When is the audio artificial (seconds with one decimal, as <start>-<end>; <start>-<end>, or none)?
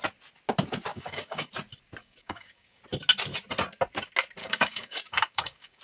0.9-1.5; 2.0-2.8; 4.4-5.8